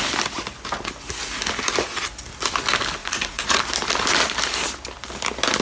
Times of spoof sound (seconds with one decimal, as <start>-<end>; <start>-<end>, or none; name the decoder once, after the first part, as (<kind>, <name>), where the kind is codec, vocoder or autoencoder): 3.0-3.6 (vocoder, Vocos)